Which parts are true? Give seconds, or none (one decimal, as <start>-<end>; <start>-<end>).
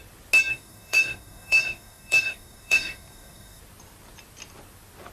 0.0-0.5; 3.6-5.1